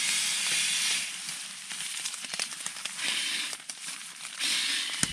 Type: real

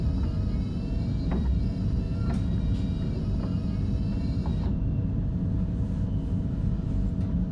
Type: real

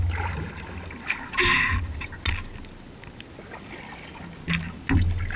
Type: real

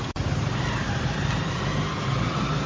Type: real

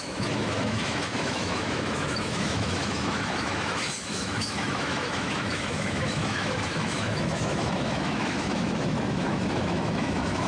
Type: fake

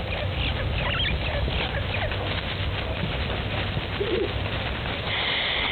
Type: real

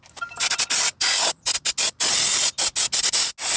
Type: real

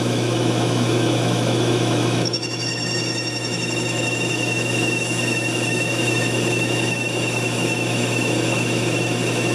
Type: fake